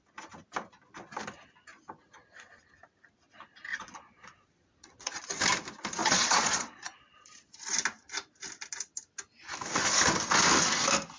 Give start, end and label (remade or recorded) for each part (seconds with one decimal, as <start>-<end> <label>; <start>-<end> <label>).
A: 0.0-3.7 recorded; 3.7-5.3 remade; 5.3-6.0 recorded; 6.0-7.5 remade; 7.5-11.2 recorded